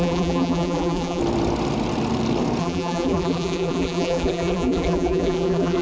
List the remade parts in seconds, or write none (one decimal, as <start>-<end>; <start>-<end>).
0.0-1.2; 2.6-5.8